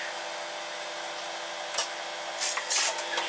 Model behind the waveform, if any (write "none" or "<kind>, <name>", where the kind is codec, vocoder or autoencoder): none